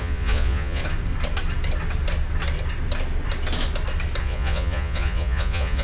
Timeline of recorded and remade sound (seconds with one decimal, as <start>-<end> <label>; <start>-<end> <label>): 0.0-0.8 remade; 0.8-4.2 recorded; 4.2-5.8 remade